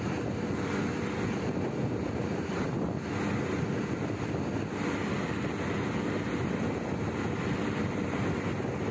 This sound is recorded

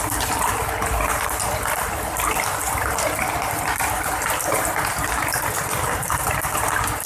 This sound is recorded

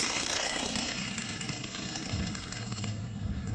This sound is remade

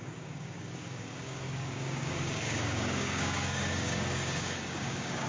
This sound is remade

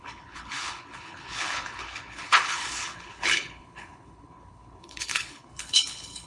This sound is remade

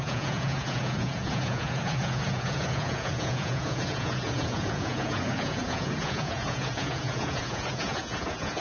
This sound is remade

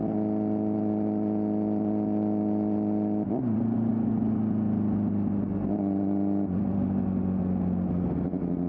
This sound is recorded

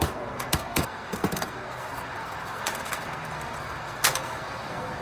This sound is remade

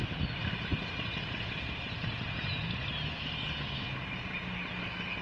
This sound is recorded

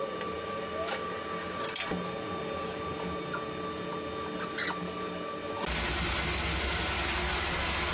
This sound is recorded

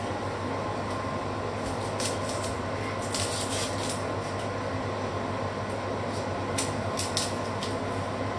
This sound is recorded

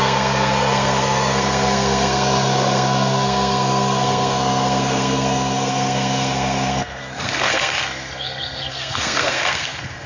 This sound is remade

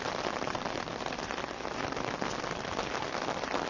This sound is recorded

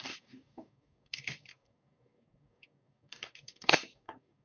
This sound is remade